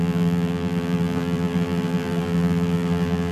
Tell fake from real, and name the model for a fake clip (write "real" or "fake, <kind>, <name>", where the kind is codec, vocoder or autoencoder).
fake, vocoder, BigVGAN v2